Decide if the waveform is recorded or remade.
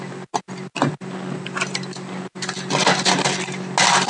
recorded